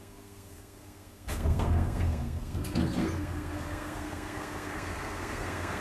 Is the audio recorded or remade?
remade